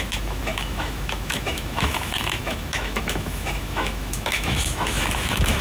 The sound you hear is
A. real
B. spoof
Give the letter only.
B